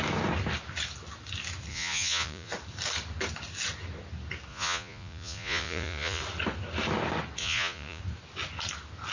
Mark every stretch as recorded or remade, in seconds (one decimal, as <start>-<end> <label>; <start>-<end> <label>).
0.0-1.7 recorded; 1.7-2.5 remade; 2.5-4.5 recorded; 4.5-6.2 remade; 6.2-7.4 recorded; 7.4-8.0 remade; 8.0-9.1 recorded